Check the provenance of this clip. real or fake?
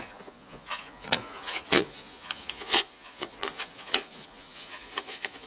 fake